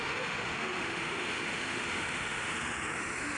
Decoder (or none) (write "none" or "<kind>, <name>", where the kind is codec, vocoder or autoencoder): autoencoder, DAC-VAE